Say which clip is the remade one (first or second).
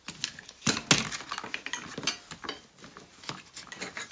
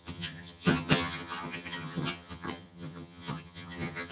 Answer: second